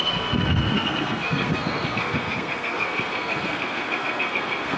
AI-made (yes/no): yes